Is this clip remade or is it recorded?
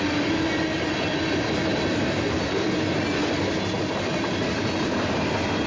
recorded